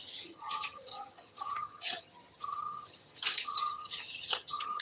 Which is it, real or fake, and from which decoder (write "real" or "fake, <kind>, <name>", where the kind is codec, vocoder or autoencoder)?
fake, vocoder, HiFi-GAN